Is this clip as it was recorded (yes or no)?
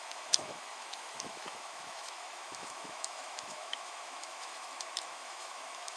no